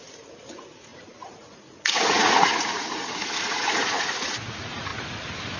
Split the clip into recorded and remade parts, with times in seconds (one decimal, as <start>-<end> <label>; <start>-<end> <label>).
0.0-4.9 remade; 4.9-5.6 recorded